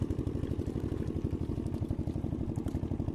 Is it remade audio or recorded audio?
recorded